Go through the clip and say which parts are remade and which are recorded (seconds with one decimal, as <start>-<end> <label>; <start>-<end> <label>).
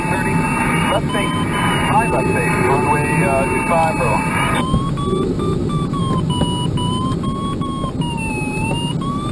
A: 0.0-9.3 recorded